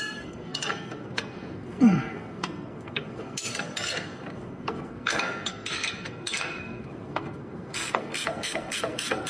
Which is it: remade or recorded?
remade